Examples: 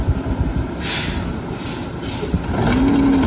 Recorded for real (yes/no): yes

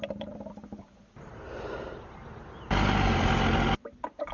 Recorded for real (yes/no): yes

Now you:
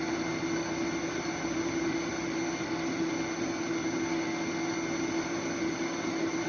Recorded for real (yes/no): yes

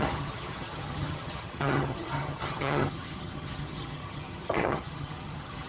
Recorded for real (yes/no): no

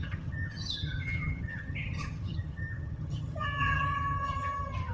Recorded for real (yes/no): no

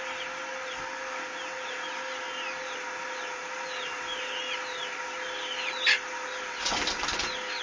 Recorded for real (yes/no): yes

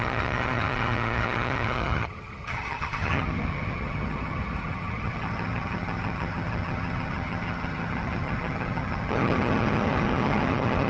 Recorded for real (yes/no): no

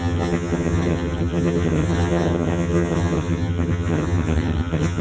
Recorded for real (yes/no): no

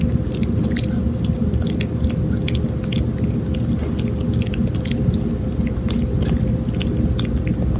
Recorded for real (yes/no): yes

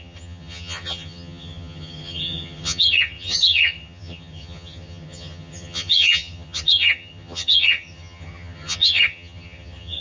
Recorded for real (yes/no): no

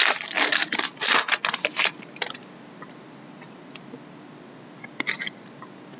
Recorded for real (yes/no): yes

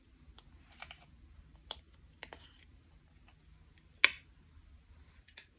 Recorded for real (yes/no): yes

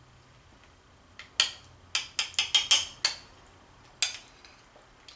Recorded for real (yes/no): yes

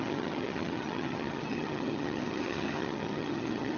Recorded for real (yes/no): no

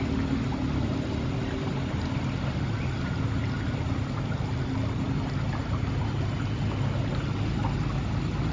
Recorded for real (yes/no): yes